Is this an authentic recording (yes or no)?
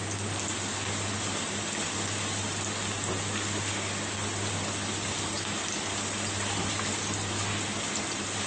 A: yes